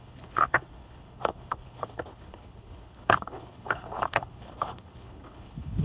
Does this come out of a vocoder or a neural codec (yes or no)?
yes